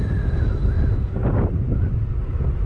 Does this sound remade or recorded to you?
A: recorded